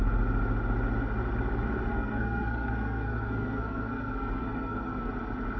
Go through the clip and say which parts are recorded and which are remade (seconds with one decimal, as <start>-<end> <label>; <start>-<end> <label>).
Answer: 0.0-1.9 recorded; 1.9-5.1 remade; 5.1-5.6 recorded

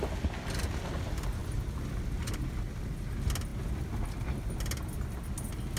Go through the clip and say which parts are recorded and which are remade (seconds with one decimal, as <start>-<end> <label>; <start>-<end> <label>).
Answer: 0.0-5.8 recorded

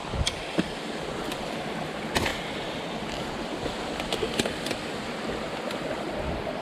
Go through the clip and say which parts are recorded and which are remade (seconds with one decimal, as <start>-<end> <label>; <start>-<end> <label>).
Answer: 0.0-6.6 recorded

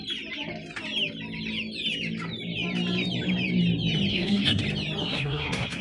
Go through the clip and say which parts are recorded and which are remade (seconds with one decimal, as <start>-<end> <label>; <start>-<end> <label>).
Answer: 0.0-4.1 recorded; 4.1-4.6 remade; 4.6-5.0 recorded; 5.0-5.8 remade